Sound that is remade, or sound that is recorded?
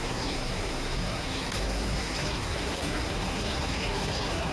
remade